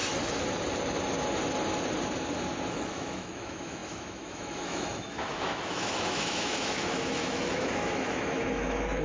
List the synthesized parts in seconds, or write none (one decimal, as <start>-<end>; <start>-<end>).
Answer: 2.7-9.0